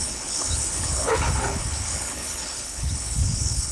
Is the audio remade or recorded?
remade